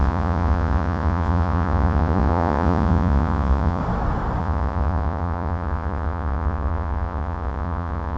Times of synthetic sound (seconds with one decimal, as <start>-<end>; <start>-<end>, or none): 0.0-3.8; 4.4-8.2

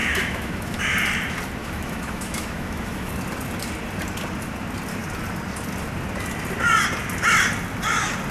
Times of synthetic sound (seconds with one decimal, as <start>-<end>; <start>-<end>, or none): 0.0-0.8; 1.6-3.1

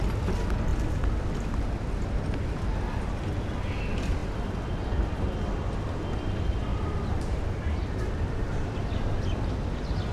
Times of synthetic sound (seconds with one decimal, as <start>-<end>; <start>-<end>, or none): 6.7-9.2

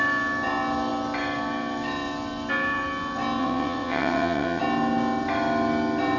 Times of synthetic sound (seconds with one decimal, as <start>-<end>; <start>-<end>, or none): 3.4-4.6

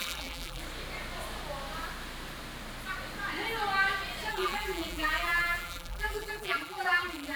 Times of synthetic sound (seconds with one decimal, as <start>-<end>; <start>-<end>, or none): 0.0-0.6; 4.3-7.4

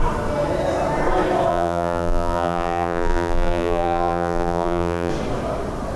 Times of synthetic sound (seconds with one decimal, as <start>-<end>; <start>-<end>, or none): 1.5-5.1

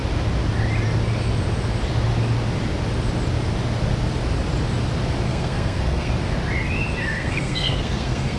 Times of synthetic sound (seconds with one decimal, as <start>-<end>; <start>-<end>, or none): 5.3-6.1; 7.0-8.4